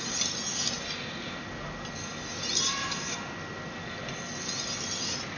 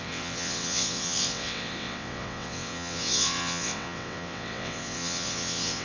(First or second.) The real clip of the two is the first